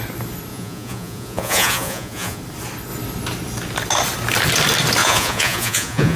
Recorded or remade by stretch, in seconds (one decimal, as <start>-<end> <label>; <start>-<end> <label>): 0.0-0.5 recorded; 0.5-2.4 remade; 2.4-5.0 recorded; 5.0-6.2 remade

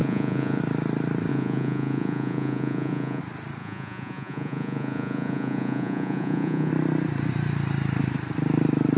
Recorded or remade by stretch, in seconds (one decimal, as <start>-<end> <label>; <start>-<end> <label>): 0.0-0.6 remade; 0.6-1.3 recorded; 1.3-3.2 remade; 3.2-3.6 recorded; 3.6-6.7 remade; 6.7-9.0 recorded

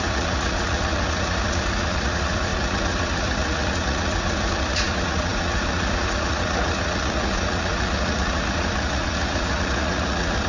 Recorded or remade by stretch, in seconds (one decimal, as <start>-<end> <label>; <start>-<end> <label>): 0.0-10.5 remade

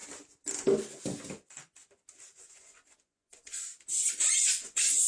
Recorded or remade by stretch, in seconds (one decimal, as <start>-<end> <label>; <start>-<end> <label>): 0.0-2.4 recorded; 2.4-3.7 remade; 3.7-4.4 recorded; 4.4-5.1 remade

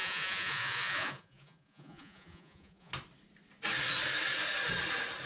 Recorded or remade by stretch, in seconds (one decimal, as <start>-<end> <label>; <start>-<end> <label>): 0.0-2.9 remade; 2.9-5.3 recorded